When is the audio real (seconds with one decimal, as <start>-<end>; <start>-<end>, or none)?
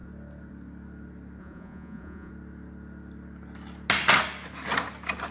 0.0-1.4; 2.3-5.3